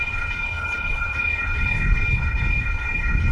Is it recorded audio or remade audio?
remade